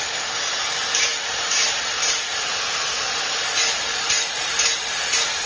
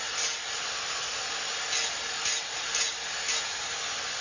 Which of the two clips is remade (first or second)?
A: first